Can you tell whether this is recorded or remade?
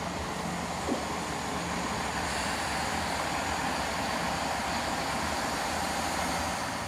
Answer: recorded